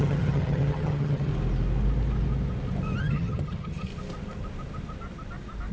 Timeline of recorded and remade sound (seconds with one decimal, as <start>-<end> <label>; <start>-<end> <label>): 0.0-1.3 remade; 1.3-3.0 recorded; 3.0-3.9 remade; 3.9-5.7 recorded